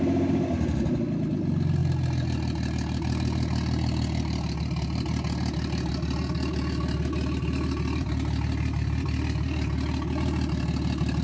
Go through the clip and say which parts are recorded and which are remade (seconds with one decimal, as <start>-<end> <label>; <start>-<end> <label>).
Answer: 0.0-11.2 recorded